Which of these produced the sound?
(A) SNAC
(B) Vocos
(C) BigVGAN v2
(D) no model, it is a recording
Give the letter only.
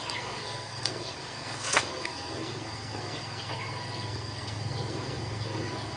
A